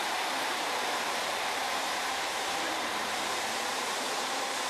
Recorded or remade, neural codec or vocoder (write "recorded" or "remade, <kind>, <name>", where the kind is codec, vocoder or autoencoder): remade, vocoder, BigVGAN v2